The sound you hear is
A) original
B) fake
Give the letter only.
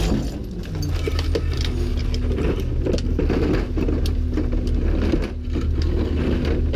A